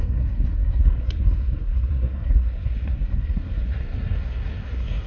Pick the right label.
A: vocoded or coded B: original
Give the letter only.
A